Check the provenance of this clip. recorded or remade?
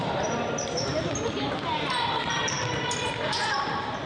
remade